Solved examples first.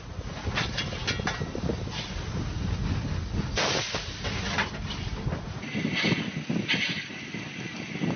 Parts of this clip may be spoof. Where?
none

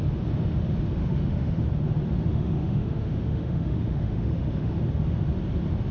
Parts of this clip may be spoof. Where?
1.0-1.6 (autoencoder, DAC-VAE); 2.3-4.8